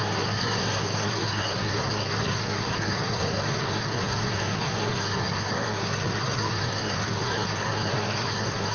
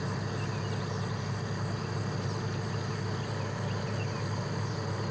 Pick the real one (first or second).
second